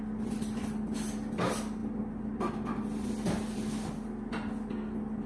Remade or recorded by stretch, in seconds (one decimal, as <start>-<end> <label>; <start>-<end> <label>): 0.0-5.3 recorded